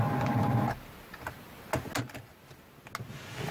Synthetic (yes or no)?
no